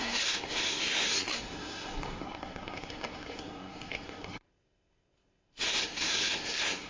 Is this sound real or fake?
fake